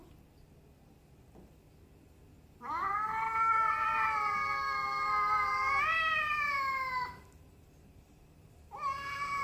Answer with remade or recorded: recorded